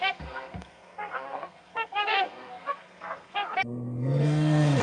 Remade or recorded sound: remade